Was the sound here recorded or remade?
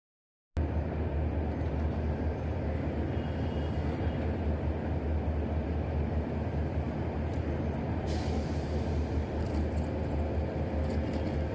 recorded